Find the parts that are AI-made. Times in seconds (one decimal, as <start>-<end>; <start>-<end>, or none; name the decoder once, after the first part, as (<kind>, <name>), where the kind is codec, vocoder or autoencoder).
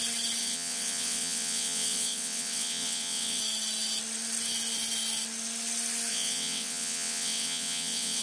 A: 0.4-3.4 (vocoder, WaveNeXt); 6.1-8.2